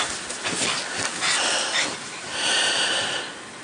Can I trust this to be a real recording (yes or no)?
yes